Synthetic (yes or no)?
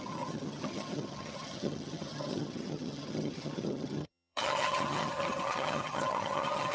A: yes